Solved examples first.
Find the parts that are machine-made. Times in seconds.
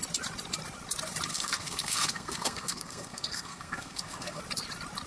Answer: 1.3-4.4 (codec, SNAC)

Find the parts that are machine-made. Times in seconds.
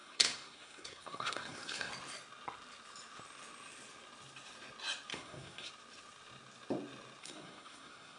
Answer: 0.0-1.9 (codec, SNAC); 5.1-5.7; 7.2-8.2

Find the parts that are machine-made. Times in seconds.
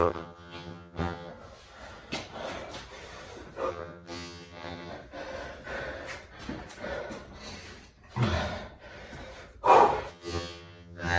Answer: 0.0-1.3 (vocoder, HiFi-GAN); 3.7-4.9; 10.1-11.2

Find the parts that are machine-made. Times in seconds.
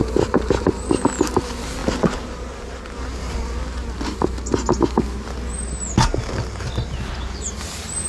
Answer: none